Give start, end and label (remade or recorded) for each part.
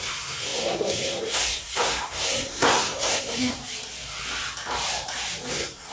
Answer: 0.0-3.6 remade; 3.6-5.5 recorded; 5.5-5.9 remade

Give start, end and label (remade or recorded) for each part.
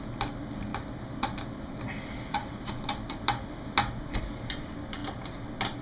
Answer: 0.0-5.8 recorded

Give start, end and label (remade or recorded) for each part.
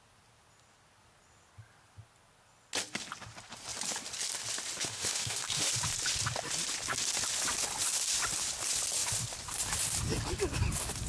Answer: 0.0-4.8 recorded; 4.8-5.7 remade; 5.7-11.1 recorded